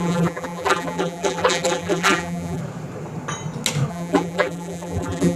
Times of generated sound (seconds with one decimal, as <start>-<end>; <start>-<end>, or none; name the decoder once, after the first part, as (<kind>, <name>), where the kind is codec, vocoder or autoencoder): 0.0-2.6 (vocoder, BigVGAN v2); 3.9-5.4